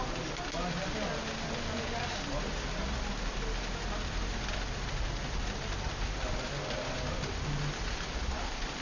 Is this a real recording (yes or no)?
yes